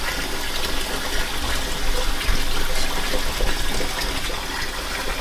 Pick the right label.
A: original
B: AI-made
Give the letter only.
A